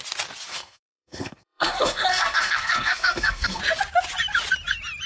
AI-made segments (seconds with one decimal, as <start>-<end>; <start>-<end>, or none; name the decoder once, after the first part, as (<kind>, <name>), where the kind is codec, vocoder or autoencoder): 0.5-3.6 (codec, SNAC)